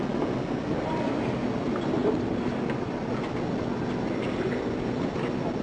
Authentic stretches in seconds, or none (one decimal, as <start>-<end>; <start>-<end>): 0.0-2.0; 3.1-5.6